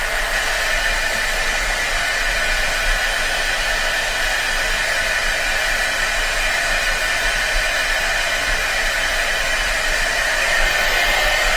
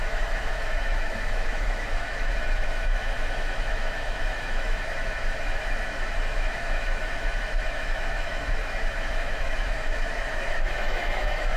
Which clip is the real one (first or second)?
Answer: first